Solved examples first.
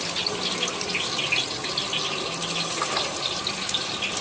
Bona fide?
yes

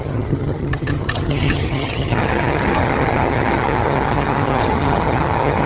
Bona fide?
no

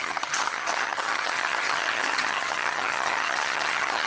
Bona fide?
no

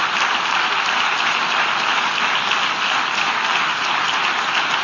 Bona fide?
yes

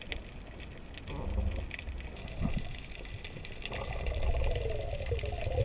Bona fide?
yes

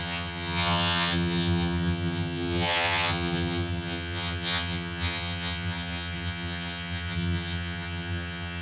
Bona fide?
no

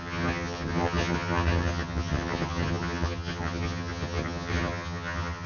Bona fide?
no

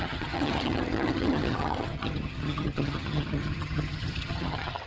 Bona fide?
no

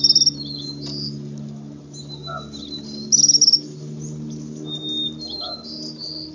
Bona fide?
yes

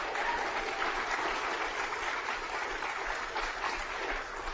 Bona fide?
yes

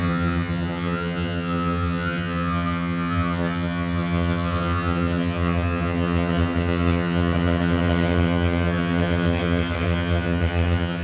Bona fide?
no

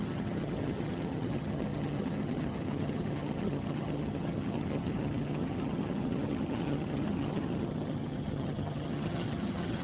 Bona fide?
no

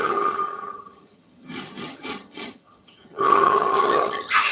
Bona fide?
no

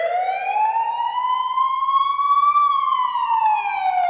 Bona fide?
yes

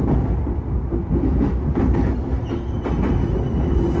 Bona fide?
yes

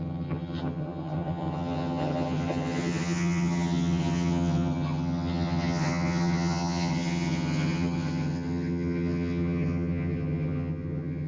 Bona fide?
no